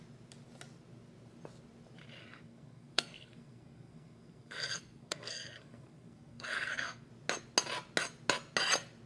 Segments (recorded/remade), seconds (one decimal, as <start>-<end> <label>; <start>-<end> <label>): 0.0-2.2 recorded; 2.2-7.1 remade; 7.1-9.1 recorded